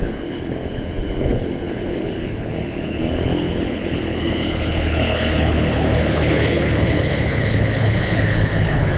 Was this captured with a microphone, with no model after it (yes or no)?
no